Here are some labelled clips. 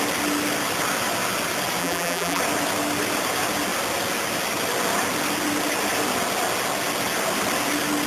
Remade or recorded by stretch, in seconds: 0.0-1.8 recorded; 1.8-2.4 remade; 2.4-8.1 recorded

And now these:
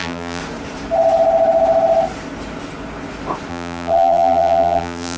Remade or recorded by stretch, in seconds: 0.0-0.4 remade; 0.4-3.5 recorded; 3.5-5.2 remade

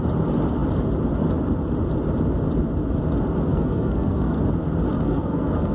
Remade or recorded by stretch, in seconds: 0.0-3.5 recorded; 3.5-4.4 remade; 4.4-4.9 recorded; 4.9-5.7 remade

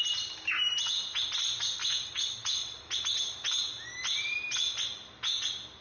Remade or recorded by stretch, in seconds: 0.0-1.8 recorded; 1.8-2.8 remade; 2.8-5.8 recorded

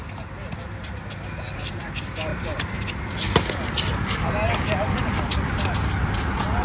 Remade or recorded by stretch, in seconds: 0.0-6.6 recorded

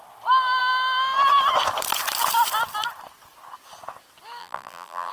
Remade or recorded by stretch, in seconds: 0.0-4.4 recorded; 4.4-5.1 remade

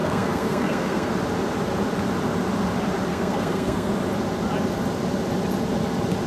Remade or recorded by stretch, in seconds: 0.0-1.1 remade; 1.1-3.1 recorded; 3.1-3.9 remade; 3.9-6.3 recorded